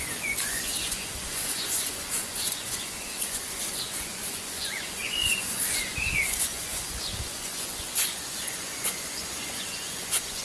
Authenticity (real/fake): fake